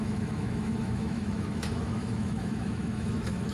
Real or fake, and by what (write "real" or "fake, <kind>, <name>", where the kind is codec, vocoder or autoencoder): fake, autoencoder, DAC-VAE